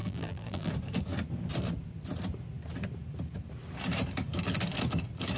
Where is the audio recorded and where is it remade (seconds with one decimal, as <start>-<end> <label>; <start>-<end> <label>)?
0.0-0.7 remade; 0.7-5.4 recorded